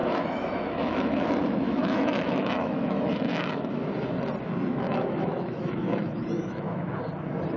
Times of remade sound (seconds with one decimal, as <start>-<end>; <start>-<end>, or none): 0.0-3.9; 4.7-7.0